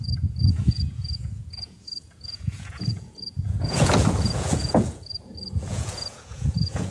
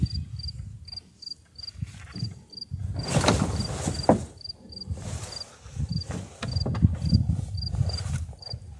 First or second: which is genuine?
second